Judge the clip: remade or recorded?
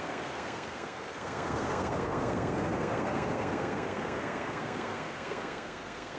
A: remade